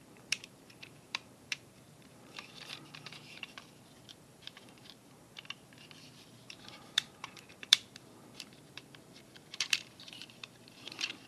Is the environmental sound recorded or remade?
remade